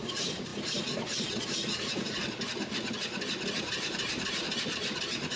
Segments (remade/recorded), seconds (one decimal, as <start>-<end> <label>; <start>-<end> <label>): 0.0-2.2 remade; 2.2-3.6 recorded; 3.6-5.4 remade